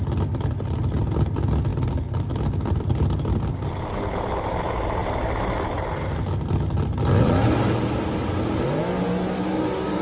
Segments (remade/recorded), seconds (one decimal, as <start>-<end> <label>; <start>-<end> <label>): 0.0-10.0 recorded